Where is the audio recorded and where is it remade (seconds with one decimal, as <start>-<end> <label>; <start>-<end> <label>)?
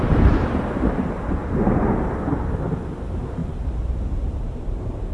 0.0-1.4 remade; 1.4-3.0 recorded; 3.0-5.1 remade